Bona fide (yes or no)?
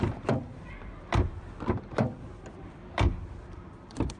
no